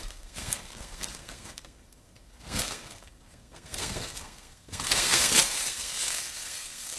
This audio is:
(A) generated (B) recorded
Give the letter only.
A